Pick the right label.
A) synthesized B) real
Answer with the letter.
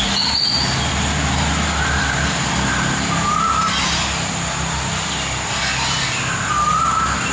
B